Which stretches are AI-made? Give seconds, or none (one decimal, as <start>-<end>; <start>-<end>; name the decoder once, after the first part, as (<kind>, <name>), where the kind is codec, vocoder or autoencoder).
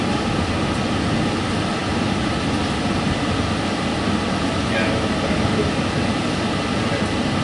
none